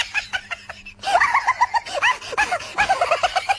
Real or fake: real